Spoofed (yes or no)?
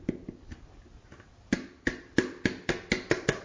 no